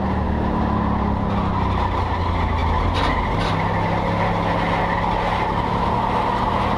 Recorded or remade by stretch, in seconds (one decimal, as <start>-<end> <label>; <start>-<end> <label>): 0.0-6.8 recorded